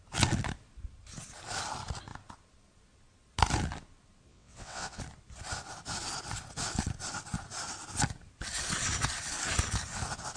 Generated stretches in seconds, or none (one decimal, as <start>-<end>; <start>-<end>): 4.3-5.0